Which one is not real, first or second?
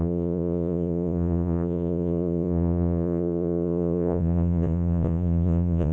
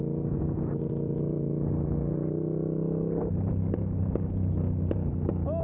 first